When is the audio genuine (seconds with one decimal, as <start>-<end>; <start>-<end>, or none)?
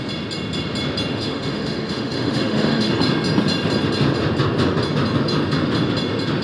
0.0-1.1; 2.9-6.4